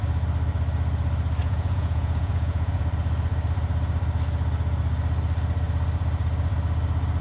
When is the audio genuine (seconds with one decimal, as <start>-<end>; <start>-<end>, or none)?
0.0-1.4; 2.8-7.2